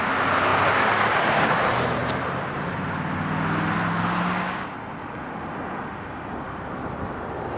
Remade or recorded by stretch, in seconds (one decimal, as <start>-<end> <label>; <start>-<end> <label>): 0.0-2.0 recorded; 2.0-2.8 remade; 2.8-7.6 recorded